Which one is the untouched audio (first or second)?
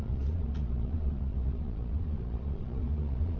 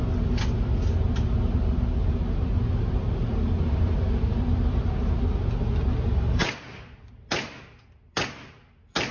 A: second